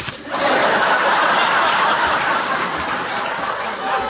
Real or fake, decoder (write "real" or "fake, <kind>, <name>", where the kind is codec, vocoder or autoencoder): real